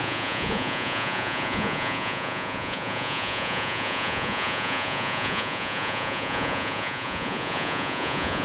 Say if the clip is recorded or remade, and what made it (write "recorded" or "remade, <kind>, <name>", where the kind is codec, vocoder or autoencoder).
remade, vocoder, Vocos